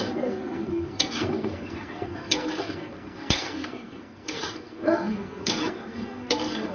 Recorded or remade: remade